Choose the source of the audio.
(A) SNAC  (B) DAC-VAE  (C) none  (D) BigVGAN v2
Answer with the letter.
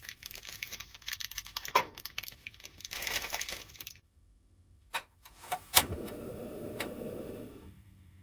B